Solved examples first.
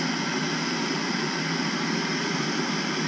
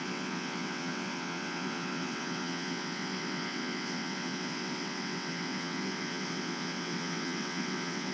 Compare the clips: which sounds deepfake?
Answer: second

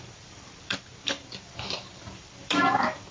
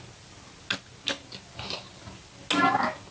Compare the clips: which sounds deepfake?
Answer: first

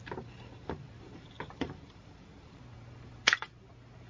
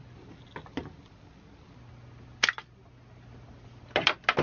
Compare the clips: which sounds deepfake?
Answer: first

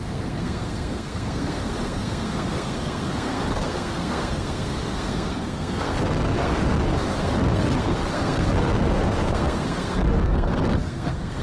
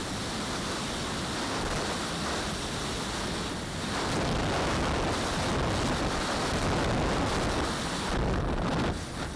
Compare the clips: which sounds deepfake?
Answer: first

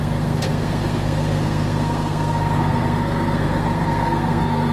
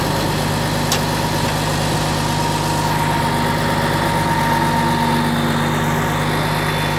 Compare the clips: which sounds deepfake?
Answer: first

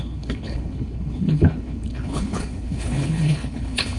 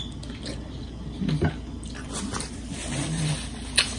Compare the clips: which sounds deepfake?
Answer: first